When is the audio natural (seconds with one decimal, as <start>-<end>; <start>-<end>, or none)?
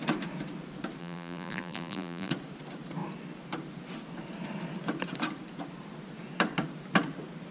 0.0-1.0; 2.3-7.5